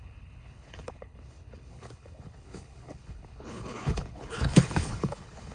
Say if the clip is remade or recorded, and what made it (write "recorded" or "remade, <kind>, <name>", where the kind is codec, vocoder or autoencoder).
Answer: remade, codec, HILCodec